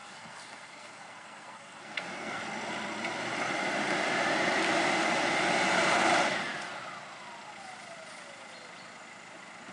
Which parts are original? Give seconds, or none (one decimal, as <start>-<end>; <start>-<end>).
2.4-9.7